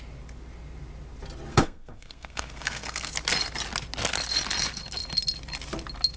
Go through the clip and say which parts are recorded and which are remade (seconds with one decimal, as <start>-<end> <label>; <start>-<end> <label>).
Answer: 0.0-1.5 recorded; 1.5-3.1 remade; 3.1-6.2 recorded